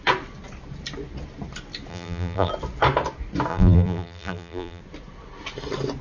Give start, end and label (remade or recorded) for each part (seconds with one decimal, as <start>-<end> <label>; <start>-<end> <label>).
0.0-1.9 recorded; 1.9-2.5 remade; 2.5-3.5 recorded; 3.5-4.8 remade; 4.8-6.0 recorded

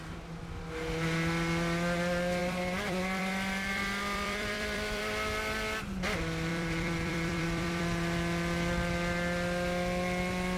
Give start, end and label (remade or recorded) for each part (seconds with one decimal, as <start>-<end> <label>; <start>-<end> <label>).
0.0-2.4 recorded; 2.4-5.0 remade; 5.0-6.5 recorded; 6.5-7.8 remade; 7.8-10.6 recorded